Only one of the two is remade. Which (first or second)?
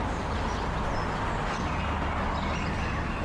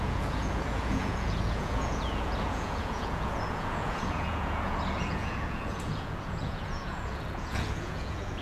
second